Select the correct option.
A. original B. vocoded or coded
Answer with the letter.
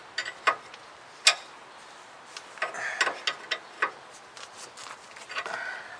A